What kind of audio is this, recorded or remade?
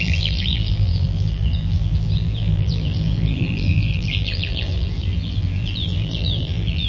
remade